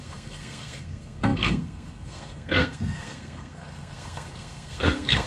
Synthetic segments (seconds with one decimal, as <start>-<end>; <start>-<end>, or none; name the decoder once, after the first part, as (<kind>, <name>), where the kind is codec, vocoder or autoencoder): 0.0-5.3 (codec, SNAC)